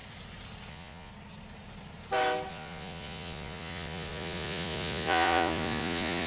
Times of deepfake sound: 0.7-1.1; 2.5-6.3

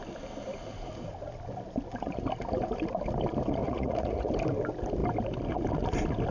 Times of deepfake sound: 3.6-4.3